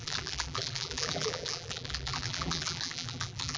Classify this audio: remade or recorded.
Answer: remade